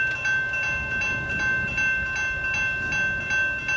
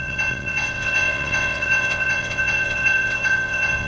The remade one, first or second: second